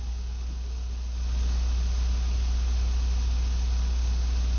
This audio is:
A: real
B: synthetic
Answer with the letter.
A